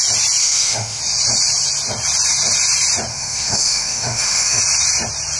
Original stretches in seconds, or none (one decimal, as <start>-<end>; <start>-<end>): 0.0-0.4; 1.0-3.1; 4.6-5.4